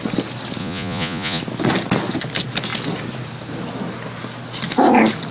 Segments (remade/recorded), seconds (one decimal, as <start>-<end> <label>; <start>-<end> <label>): 0.0-0.6 recorded; 0.6-1.4 remade; 1.4-5.3 recorded